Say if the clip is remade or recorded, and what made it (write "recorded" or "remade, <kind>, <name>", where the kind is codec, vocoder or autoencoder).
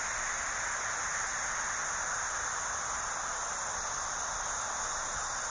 recorded